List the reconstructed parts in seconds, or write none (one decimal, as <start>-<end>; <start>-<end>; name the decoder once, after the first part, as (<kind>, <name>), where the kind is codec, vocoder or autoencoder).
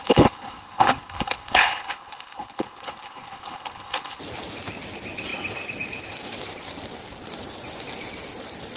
0.0-4.2 (codec, HILCodec)